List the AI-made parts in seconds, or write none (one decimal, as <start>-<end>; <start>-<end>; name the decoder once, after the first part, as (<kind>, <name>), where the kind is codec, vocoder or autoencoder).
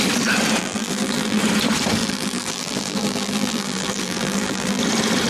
0.6-1.4 (vocoder, BigVGAN v2); 2.0-4.8